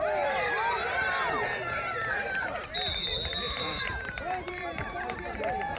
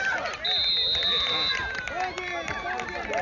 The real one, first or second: second